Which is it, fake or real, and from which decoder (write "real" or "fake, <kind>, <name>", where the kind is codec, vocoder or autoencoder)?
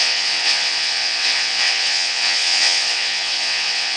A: fake, vocoder, WaveNeXt